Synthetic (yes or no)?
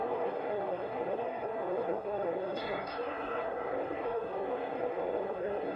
yes